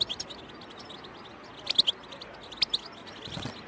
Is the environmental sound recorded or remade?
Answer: recorded